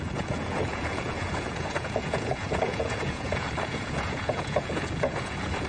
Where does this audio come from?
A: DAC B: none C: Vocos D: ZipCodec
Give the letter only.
C